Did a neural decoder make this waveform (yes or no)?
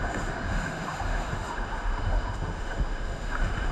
yes